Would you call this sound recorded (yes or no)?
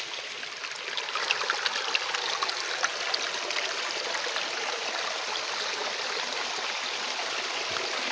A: yes